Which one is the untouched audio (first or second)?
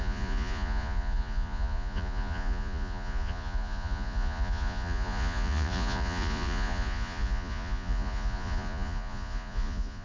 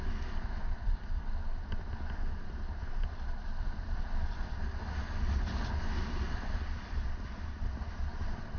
second